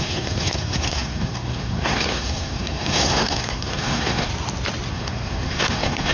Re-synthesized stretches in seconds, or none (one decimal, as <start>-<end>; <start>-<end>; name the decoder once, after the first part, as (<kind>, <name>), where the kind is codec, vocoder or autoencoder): 0.0-4.3 (codec, SNAC); 4.9-6.1